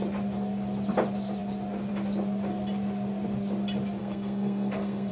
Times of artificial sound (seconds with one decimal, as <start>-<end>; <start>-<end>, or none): 4.0-5.1